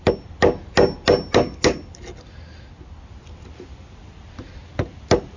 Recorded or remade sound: recorded